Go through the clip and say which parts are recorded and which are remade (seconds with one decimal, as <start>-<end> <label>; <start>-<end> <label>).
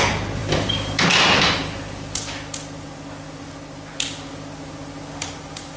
0.0-5.8 recorded